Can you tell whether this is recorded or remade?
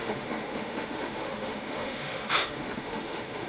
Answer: remade